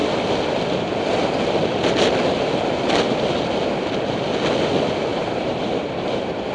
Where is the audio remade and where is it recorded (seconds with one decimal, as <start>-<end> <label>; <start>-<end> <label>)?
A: 0.0-5.1 recorded; 5.1-6.5 remade